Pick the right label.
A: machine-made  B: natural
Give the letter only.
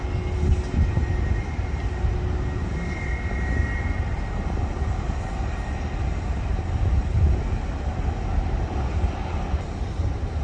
B